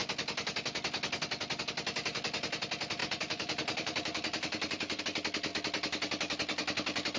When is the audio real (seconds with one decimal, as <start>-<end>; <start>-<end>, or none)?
0.0-3.0; 5.0-7.2